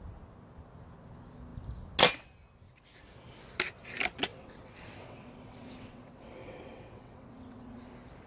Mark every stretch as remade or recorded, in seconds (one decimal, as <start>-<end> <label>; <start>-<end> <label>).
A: 0.0-4.3 recorded; 4.3-7.9 remade; 7.9-8.3 recorded